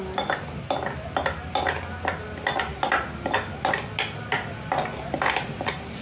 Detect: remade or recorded recorded